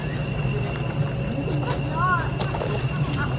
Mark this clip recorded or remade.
recorded